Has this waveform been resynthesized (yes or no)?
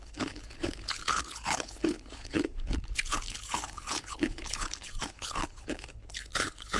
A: yes